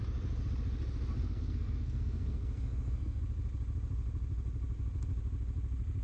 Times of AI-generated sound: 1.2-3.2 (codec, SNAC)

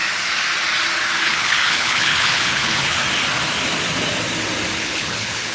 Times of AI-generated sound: 1.2-3.0 (codec, HILCodec); 4.8-5.5